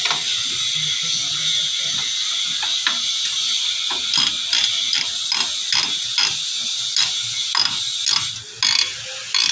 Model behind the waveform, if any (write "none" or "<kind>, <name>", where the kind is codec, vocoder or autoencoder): none